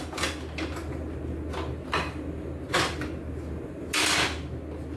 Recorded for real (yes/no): yes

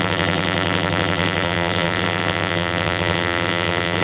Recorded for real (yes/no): no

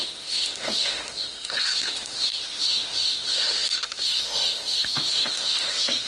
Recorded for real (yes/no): no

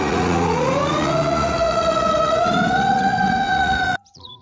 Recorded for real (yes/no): no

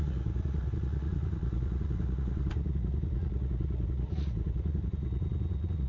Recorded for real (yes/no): no